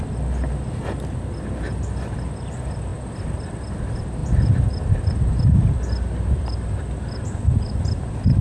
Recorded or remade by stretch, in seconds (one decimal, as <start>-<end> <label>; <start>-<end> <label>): 0.0-8.4 recorded